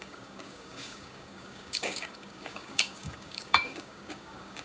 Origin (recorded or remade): remade